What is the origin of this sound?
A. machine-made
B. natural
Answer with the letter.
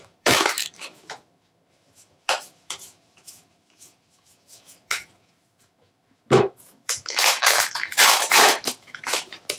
A